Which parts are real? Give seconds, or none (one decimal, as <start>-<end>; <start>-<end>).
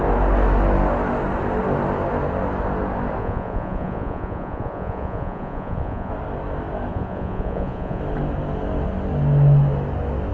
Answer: 0.0-3.2; 6.1-6.9; 8.0-10.3